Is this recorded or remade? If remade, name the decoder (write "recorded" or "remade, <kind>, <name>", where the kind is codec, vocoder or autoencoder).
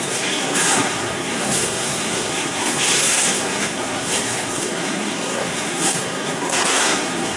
remade, codec, SNAC